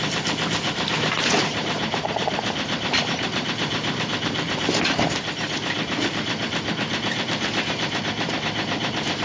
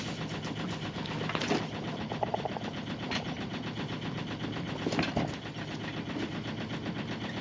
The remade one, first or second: first